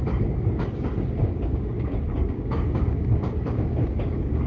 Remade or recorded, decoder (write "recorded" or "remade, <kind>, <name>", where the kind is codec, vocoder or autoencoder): remade, codec, DAC